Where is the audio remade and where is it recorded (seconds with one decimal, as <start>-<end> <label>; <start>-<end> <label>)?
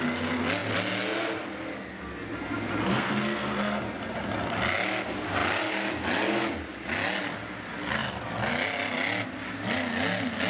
0.0-2.9 recorded; 2.9-3.8 remade; 3.8-10.5 recorded